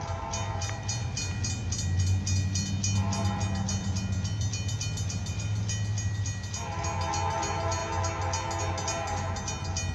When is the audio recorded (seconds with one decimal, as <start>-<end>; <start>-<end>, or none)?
0.0-9.9